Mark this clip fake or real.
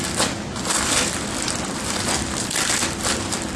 fake